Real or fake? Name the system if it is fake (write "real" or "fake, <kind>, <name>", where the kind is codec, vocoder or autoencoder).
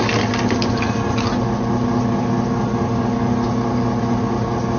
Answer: real